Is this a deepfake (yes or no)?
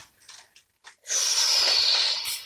no